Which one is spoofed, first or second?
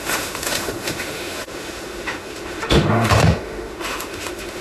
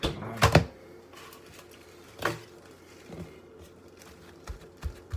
first